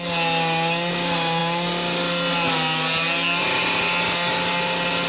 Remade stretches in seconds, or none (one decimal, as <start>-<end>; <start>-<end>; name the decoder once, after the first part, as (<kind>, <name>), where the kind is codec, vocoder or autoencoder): none